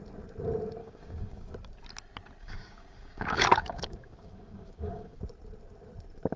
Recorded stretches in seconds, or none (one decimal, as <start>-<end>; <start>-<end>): 0.0-0.8; 1.5-2.4; 5.2-6.4